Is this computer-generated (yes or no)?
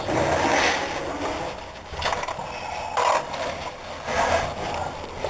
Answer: no